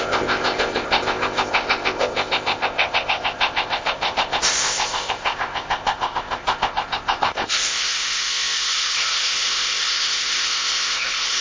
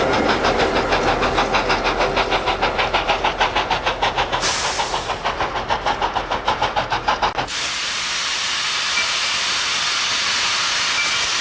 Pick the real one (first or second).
second